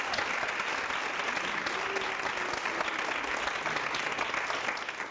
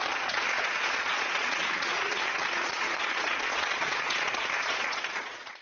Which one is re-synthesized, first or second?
second